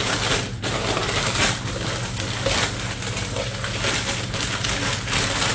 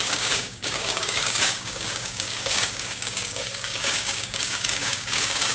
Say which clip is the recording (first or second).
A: first